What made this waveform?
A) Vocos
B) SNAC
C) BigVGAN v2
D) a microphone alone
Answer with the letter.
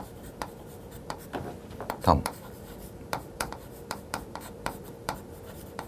C